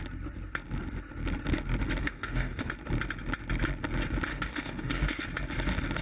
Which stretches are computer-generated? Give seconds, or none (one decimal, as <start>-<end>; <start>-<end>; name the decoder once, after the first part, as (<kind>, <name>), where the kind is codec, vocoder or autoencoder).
2.0-2.7 (autoencoder, DAC-VAE); 4.3-5.2